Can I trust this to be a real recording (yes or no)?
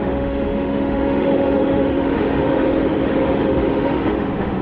no